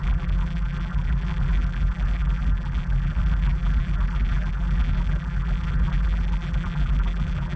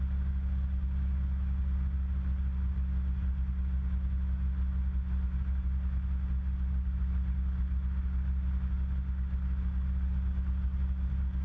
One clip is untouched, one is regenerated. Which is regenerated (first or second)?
first